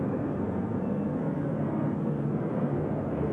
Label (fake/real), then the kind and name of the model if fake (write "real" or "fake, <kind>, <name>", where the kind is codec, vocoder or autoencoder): fake, codec, SNAC